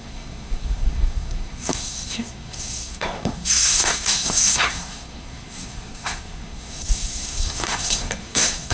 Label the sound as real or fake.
fake